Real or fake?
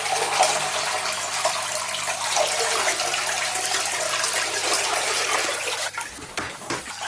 real